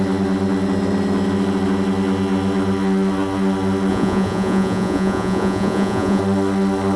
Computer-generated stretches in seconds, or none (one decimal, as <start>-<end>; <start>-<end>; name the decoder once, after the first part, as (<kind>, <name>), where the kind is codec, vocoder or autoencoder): 3.9-6.2 (vocoder, Vocos)